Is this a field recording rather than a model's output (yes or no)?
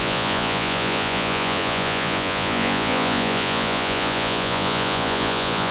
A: no